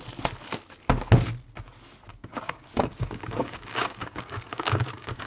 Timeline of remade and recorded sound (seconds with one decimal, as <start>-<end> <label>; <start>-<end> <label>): 0.0-2.1 recorded; 2.1-5.3 remade